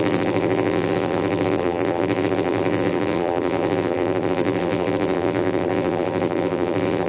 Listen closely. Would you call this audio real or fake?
fake